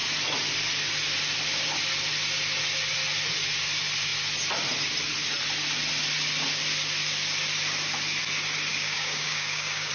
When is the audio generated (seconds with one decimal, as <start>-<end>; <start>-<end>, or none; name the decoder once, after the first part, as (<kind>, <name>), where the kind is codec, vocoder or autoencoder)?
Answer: 8.7-9.9 (codec, DAC)